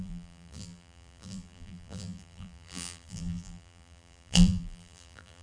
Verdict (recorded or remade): remade